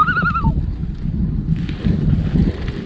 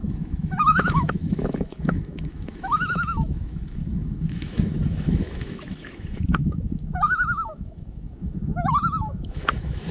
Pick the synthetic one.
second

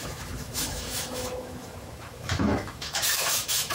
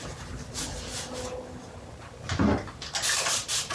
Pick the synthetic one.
first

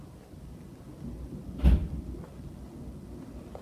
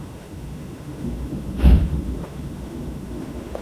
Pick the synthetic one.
second